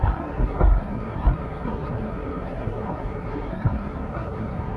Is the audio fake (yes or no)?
yes